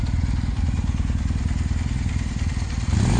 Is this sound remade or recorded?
recorded